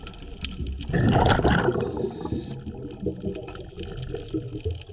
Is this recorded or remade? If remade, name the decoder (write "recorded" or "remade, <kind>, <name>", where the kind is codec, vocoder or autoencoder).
recorded